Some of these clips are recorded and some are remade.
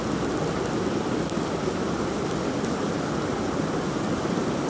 recorded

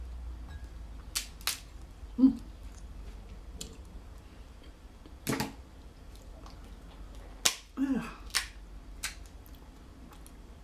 recorded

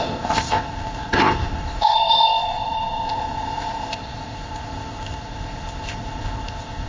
remade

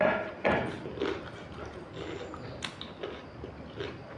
recorded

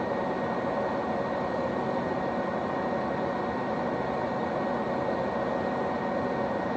recorded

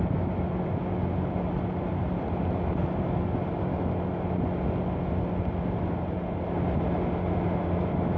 recorded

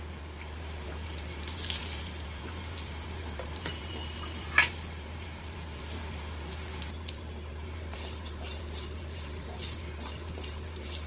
remade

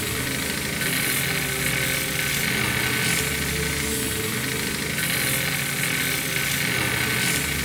recorded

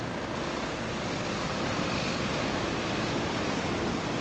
recorded